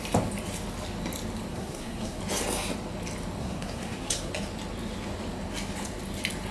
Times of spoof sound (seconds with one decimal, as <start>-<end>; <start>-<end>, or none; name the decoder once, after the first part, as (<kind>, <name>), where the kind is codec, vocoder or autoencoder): 1.5-2.2 (codec, SNAC); 3.4-4.3